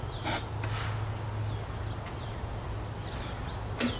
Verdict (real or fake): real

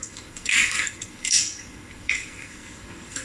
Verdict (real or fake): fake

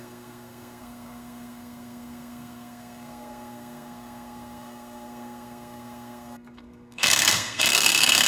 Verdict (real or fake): fake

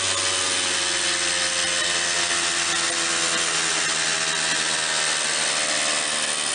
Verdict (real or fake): real